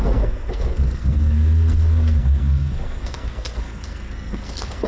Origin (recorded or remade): remade